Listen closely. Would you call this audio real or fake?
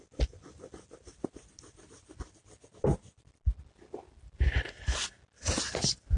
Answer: real